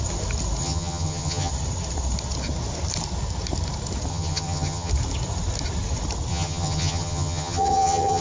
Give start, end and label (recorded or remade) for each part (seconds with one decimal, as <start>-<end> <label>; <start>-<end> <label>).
0.0-0.6 recorded; 0.6-1.5 remade; 1.5-4.1 recorded; 4.1-4.9 remade; 4.9-6.3 recorded; 6.3-8.2 remade